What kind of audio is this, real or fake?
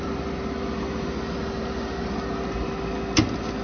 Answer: real